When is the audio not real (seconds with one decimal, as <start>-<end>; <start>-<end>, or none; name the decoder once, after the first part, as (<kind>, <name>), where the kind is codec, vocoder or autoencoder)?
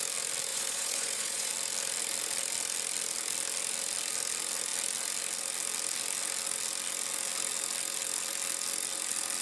0.5-1.5 (vocoder, Vocos)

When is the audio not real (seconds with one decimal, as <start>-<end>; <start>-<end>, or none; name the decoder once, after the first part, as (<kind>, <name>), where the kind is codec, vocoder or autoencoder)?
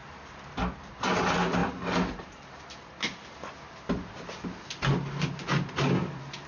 none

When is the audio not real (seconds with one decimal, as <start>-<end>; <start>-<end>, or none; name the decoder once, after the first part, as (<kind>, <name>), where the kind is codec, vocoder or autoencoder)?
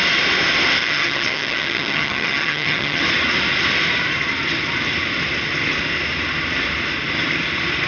0.8-3.0 (vocoder, HiFi-GAN)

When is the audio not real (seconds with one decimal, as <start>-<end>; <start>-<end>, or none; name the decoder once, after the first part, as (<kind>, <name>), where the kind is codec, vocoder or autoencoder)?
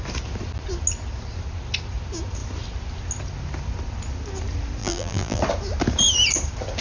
4.8-5.4 (vocoder, BigVGAN v2)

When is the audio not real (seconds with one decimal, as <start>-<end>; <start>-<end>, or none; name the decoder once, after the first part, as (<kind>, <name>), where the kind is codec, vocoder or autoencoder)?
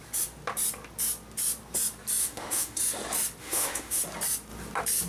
2.2-2.8 (autoencoder, DAC-VAE); 3.4-4.0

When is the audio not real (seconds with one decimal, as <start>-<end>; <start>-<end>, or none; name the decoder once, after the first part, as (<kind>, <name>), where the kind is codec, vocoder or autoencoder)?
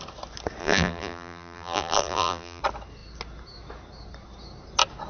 0.6-2.6 (vocoder, BigVGAN v2)